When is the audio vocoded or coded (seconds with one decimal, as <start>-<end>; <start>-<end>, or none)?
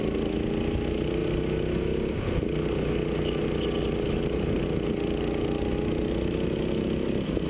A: none